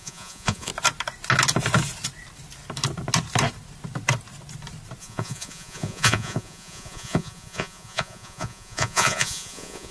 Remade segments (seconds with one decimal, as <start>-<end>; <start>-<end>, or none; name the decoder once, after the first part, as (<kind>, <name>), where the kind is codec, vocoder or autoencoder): 0.0-0.7 (vocoder, Vocos); 5.0-9.9